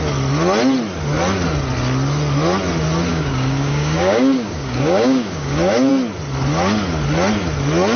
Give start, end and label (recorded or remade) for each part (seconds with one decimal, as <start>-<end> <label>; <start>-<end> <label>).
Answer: 0.0-3.1 recorded; 3.1-5.9 remade; 5.9-8.0 recorded